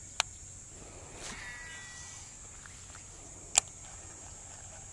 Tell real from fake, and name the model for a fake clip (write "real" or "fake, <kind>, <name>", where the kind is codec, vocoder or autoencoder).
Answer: real